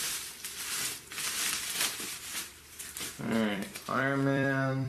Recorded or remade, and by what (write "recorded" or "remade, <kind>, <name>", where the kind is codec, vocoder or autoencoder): remade, vocoder, BigVGAN v2